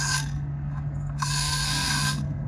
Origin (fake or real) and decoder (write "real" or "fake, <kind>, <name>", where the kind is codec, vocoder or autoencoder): fake, codec, SNAC